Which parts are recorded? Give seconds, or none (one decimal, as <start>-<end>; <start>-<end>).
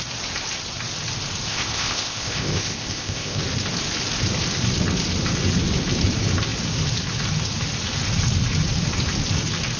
0.0-1.5; 3.4-9.8